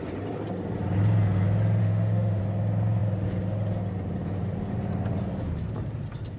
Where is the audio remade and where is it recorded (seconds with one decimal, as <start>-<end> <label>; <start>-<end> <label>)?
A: 0.0-1.8 recorded; 1.8-2.4 remade; 2.4-6.4 recorded